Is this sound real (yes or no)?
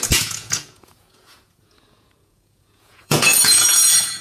no